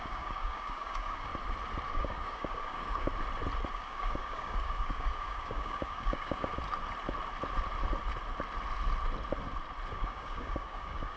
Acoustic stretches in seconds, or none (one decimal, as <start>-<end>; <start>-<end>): 1.3-1.9; 3.1-3.7; 6.5-9.9